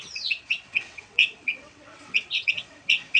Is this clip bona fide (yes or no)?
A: no